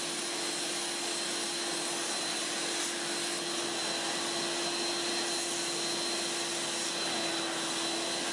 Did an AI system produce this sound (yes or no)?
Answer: no